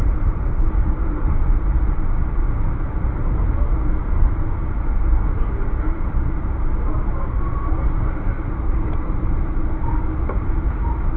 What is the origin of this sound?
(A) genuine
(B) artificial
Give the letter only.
B